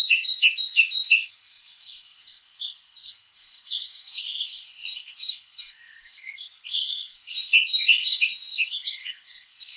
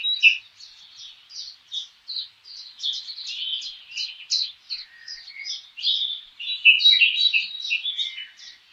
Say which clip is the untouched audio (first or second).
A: second